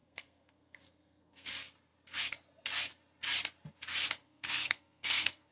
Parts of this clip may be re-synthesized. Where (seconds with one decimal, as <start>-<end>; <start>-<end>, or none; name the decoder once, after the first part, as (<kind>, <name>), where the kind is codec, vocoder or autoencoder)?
0.0-1.5 (codec, SNAC); 4.2-5.5